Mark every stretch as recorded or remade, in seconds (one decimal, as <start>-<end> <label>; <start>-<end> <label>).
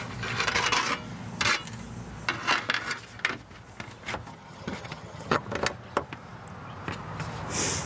0.0-4.3 recorded; 4.3-5.4 remade; 5.4-7.9 recorded